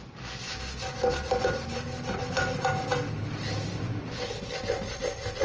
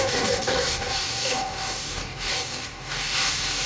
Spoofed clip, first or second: second